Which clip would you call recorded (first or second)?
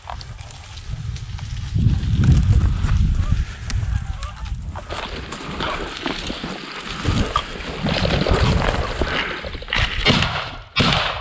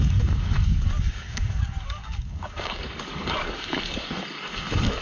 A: first